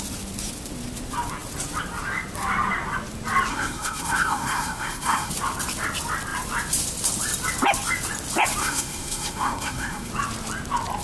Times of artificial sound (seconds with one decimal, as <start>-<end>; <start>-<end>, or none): 3.5-5.3; 8.6-10.1